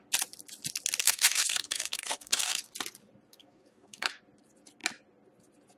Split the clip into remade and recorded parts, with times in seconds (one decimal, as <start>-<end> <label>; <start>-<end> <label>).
0.0-1.0 recorded; 1.0-2.7 remade; 2.7-3.3 recorded; 3.3-4.2 remade; 4.2-5.8 recorded